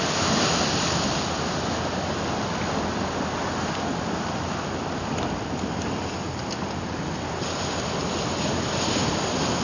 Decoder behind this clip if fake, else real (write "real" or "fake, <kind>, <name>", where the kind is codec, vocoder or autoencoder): real